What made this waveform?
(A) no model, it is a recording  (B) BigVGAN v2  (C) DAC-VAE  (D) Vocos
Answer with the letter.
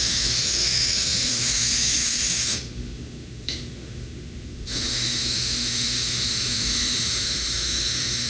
C